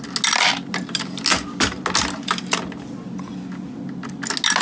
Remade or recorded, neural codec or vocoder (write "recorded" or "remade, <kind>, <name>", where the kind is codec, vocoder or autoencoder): recorded